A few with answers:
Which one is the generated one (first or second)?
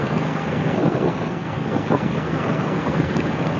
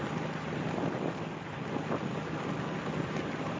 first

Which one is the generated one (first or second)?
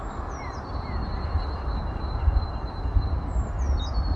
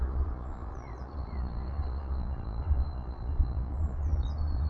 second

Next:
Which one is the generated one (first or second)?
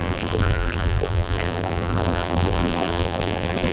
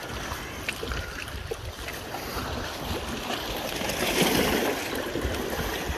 first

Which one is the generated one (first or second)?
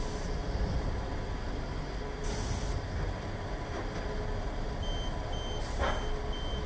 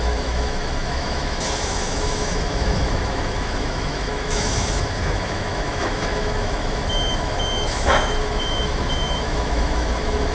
second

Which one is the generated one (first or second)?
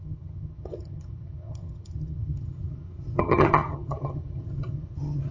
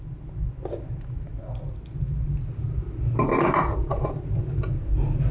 first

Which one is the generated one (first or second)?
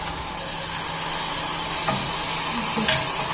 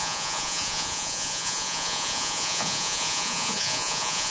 second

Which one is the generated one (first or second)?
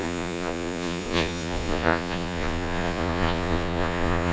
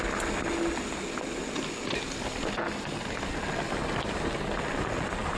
first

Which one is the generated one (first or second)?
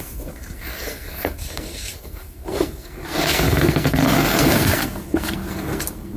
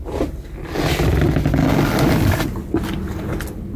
first